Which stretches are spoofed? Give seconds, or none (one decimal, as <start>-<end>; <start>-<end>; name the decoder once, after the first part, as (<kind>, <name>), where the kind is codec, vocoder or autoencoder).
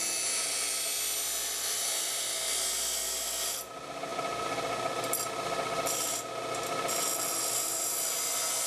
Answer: none